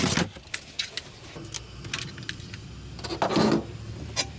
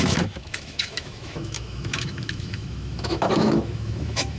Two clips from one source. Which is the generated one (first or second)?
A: second